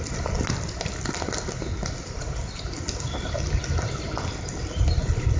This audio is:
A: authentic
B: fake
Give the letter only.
A